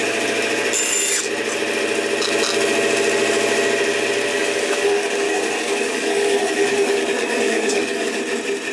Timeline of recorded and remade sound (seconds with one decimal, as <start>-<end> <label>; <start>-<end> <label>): 0.0-4.3 recorded; 4.3-8.2 remade; 8.2-8.7 recorded